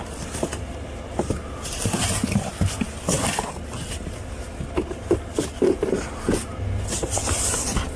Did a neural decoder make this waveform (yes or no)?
no